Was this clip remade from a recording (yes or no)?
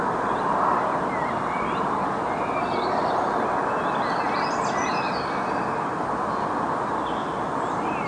no